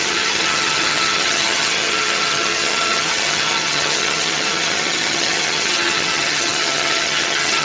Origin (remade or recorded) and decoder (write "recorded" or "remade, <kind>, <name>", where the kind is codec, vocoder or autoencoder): remade, vocoder, HiFi-GAN